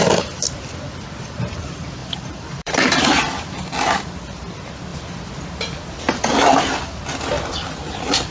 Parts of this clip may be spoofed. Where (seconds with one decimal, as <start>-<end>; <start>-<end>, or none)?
2.0-3.0